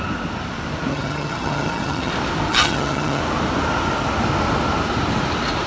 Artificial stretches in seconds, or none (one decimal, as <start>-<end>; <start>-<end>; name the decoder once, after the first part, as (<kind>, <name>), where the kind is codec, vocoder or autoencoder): 0.9-2.1 (vocoder, HiFi-GAN); 2.5-3.2